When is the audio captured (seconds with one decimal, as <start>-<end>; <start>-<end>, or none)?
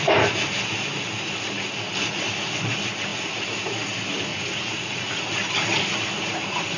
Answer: 0.0-4.3; 5.2-6.8